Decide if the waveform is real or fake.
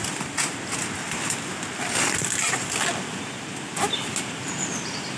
real